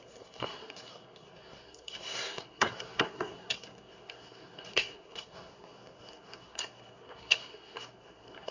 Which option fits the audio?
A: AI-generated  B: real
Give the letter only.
A